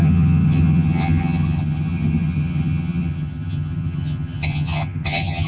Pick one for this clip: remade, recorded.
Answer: remade